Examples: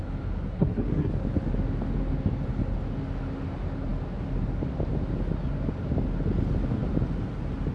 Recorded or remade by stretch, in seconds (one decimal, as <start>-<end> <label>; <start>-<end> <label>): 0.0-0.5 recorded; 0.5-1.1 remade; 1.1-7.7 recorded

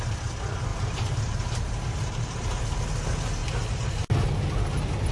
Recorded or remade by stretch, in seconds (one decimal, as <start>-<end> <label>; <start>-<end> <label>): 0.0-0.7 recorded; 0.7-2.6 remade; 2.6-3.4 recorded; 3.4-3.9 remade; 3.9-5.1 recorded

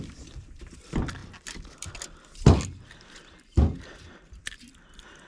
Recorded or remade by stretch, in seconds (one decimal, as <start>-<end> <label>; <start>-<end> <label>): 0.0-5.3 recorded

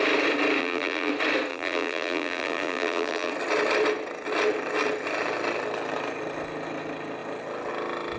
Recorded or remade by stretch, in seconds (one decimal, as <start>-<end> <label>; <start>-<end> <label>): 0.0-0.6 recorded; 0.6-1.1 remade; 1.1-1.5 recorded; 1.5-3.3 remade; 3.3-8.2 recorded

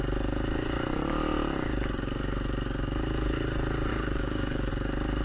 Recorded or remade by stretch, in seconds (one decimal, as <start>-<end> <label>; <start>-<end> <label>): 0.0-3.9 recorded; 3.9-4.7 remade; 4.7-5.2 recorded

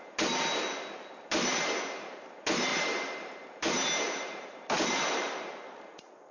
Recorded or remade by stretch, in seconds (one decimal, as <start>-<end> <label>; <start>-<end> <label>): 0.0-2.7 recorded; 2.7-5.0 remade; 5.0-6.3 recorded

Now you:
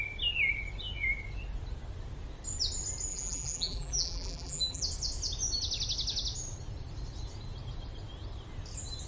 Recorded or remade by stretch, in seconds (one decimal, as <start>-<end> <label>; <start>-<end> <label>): 0.0-3.1 recorded; 3.1-4.8 remade; 4.8-9.1 recorded

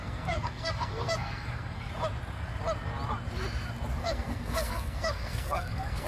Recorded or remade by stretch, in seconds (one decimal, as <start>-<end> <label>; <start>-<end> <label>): 0.0-1.9 remade; 1.9-4.0 recorded; 4.0-6.1 remade